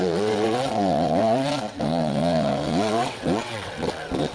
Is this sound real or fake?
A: fake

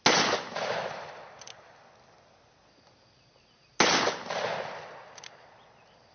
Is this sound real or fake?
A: real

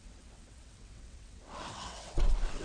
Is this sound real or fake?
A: fake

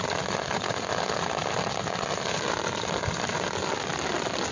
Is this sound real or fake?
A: real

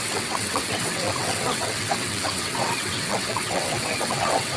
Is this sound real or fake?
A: fake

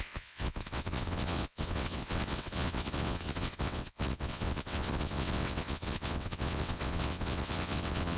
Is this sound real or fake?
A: fake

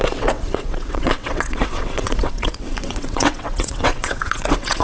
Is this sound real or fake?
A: fake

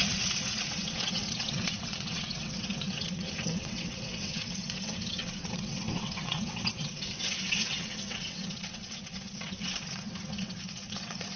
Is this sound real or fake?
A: fake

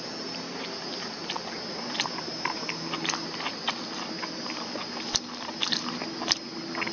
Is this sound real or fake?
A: real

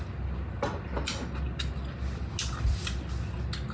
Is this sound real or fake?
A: real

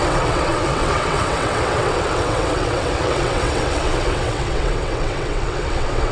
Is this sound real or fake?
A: fake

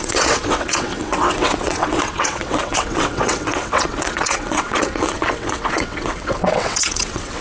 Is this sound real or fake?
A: fake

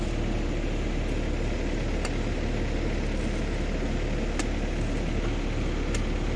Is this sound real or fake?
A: real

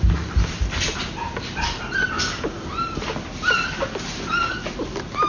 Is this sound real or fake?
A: real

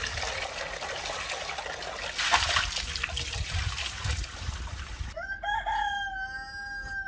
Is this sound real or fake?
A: real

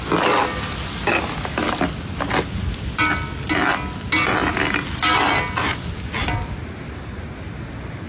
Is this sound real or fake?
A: real